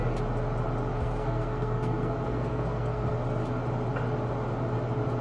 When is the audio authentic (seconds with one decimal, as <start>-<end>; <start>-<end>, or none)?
0.0-0.9; 3.1-5.2